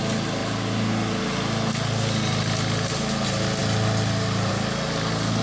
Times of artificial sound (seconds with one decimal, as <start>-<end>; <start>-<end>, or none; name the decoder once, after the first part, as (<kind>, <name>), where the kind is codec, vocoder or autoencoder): none